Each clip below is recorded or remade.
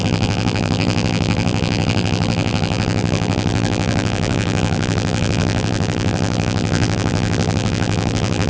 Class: remade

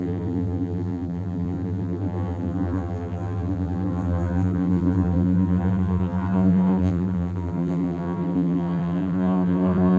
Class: remade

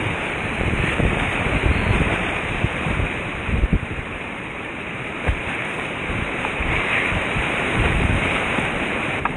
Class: remade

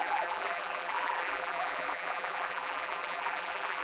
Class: remade